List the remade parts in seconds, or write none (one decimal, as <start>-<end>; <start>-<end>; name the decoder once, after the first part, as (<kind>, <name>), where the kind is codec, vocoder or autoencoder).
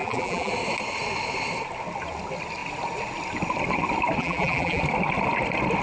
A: 0.0-0.5 (vocoder, BigVGAN v2); 4.2-4.8